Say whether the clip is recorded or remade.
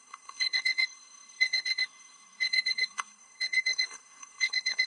remade